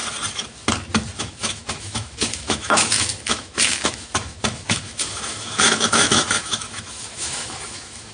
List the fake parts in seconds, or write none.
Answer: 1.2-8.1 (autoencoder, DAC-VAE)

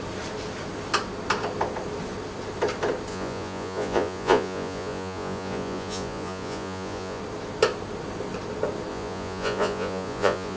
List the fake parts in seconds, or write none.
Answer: 3.1-7.2 (vocoder, Vocos); 8.9-10.6

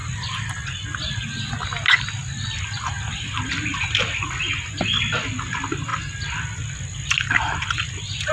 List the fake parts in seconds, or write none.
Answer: none

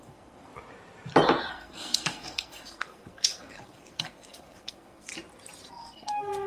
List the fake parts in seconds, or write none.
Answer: 0.0-0.5 (codec, SNAC); 1.5-5.1; 5.7-6.5